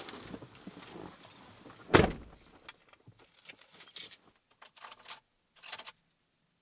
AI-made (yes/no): no